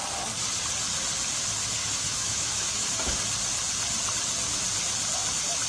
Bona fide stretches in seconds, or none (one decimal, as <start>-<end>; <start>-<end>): 0.0-1.8; 3.2-5.7